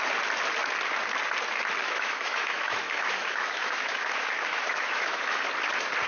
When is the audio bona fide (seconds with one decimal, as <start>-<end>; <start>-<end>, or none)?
0.0-1.8; 5.5-6.1